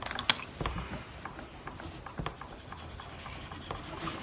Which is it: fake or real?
real